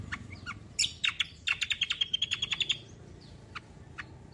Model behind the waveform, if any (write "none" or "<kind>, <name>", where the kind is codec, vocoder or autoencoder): none